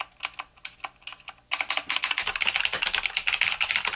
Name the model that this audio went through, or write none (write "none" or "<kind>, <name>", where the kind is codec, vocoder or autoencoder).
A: none